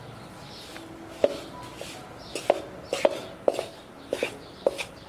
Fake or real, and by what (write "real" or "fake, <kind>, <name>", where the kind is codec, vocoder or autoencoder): real